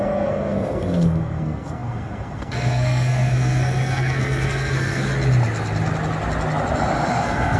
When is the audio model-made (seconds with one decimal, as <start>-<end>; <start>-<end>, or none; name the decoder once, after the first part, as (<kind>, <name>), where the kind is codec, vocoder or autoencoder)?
0.0-5.1 (codec, SNAC); 7.1-7.6